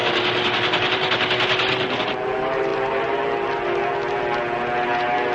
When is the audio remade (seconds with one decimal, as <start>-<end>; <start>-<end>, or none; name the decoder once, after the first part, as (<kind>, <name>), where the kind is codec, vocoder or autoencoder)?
none